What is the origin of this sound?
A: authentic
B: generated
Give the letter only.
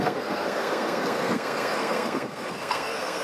B